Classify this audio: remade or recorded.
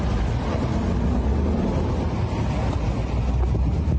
recorded